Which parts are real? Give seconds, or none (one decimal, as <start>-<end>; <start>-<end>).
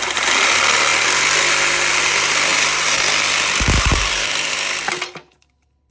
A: 0.0-5.9